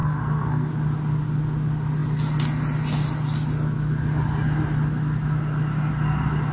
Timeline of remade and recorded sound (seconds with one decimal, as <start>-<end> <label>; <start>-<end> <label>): 0.0-0.7 remade; 0.7-6.5 recorded